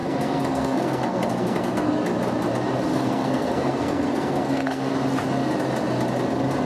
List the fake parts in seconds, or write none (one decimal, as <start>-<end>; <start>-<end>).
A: 0.0-1.9; 2.9-4.9